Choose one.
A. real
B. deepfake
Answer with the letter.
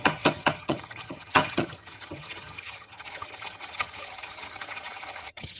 B